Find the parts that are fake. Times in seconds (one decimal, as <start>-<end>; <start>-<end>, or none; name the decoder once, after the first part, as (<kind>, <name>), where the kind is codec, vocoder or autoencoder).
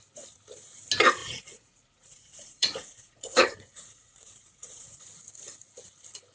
1.2-5.0 (vocoder, Vocos)